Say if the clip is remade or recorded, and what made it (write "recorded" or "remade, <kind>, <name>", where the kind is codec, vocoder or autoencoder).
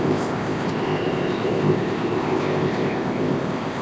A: remade, codec, ZipCodec